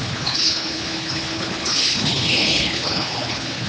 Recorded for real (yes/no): no